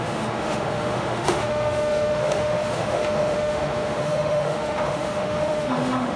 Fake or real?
fake